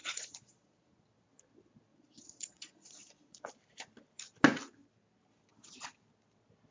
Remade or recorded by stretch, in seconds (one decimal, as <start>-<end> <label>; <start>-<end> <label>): 0.0-1.0 remade; 1.0-1.9 recorded; 1.9-3.5 remade; 3.5-6.7 recorded